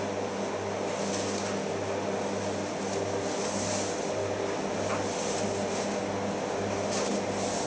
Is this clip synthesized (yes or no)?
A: no